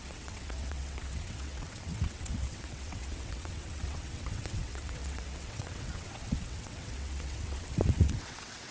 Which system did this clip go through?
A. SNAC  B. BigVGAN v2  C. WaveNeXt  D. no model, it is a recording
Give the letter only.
C